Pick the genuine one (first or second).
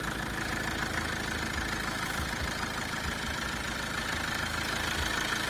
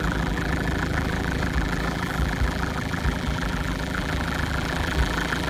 first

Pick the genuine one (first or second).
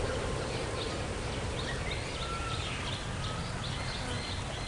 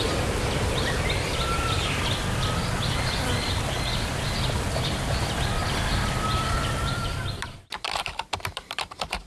first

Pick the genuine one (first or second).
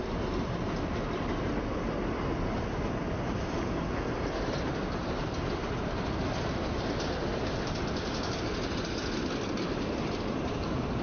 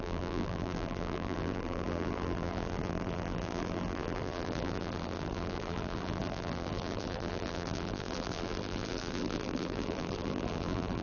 first